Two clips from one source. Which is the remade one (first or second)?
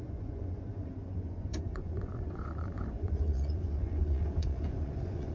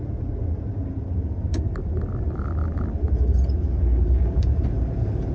first